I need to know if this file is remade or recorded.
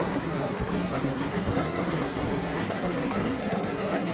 remade